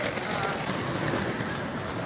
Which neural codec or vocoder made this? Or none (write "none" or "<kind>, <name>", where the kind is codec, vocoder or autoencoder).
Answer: none